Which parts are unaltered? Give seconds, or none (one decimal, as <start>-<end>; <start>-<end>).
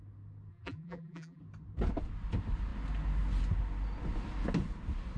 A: 0.0-0.5; 1.4-5.2